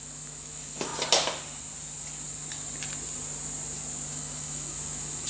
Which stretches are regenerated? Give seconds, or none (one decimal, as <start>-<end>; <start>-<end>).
0.0-0.9; 4.1-5.3